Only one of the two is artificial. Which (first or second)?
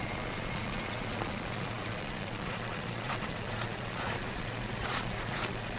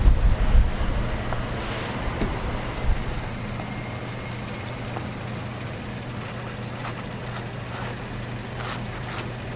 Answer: first